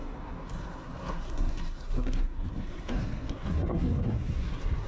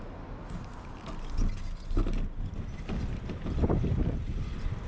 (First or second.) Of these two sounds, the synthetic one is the first